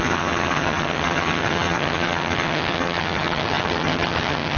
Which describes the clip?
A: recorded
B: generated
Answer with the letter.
B